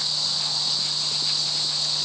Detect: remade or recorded recorded